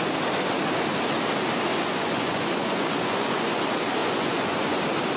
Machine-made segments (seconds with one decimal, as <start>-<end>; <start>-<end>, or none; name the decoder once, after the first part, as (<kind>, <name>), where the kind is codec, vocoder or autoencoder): 1.7-3.6 (vocoder, Vocos); 4.0-4.8